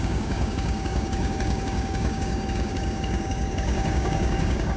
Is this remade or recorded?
remade